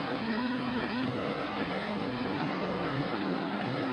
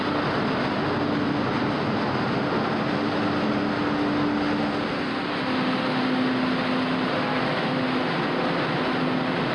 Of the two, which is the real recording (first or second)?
second